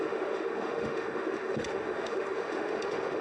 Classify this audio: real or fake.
fake